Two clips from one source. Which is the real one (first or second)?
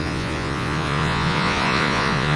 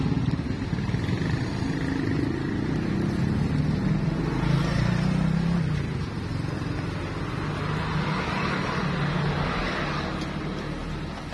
second